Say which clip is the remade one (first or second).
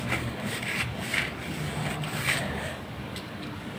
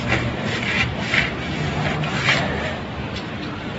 first